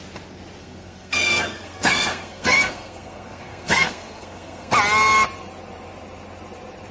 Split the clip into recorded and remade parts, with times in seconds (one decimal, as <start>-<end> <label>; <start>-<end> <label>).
0.0-0.6 recorded; 0.6-4.7 remade; 4.7-6.9 recorded

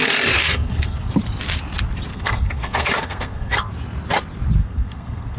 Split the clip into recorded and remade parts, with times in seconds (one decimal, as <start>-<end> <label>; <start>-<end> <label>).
0.0-0.4 recorded; 0.4-1.1 remade; 1.1-2.1 recorded; 2.1-3.7 remade; 3.7-4.6 recorded; 4.6-5.4 remade

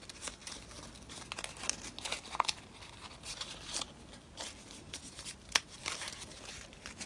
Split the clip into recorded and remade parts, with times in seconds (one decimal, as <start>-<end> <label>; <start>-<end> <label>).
0.0-0.4 remade; 0.4-4.7 recorded; 4.7-7.1 remade

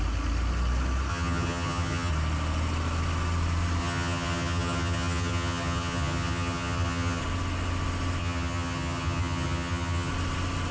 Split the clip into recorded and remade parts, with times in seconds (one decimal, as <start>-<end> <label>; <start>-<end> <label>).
0.0-1.1 recorded; 1.1-2.1 remade; 2.1-3.8 recorded; 3.8-7.2 remade; 7.2-8.2 recorded; 8.2-10.1 remade; 10.1-10.7 recorded

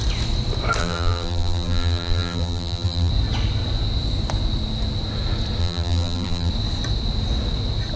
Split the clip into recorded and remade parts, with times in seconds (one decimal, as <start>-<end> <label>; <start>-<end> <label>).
0.0-0.8 recorded; 0.8-3.1 remade; 3.1-5.6 recorded; 5.6-6.5 remade; 6.5-8.0 recorded

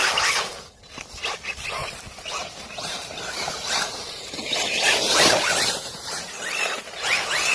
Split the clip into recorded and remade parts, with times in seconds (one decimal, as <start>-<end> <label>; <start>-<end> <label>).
0.0-1.8 recorded; 1.8-6.3 remade; 6.3-7.5 recorded

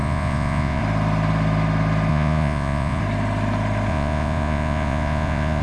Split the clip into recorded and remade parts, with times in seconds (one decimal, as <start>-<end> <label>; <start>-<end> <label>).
0.0-0.8 remade; 0.8-2.1 recorded; 2.1-3.0 remade; 3.0-3.9 recorded; 3.9-5.6 remade

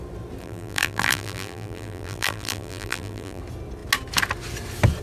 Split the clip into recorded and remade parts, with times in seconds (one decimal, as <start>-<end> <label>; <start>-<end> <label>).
0.0-0.4 recorded; 0.4-3.4 remade; 3.4-5.0 recorded